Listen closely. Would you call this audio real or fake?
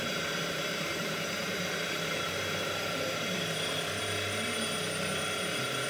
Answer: fake